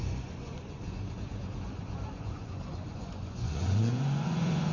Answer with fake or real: fake